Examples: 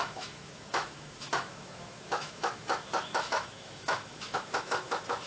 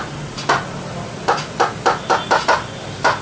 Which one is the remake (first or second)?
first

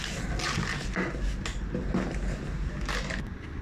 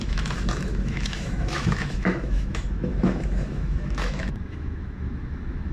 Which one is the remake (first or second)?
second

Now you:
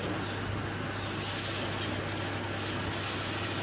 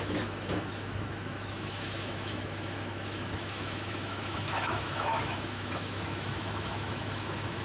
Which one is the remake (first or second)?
second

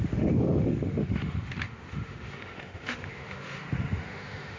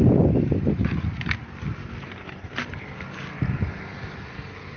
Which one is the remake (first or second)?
first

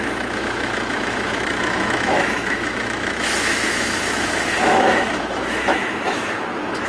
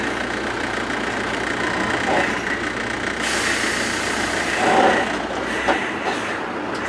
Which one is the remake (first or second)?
first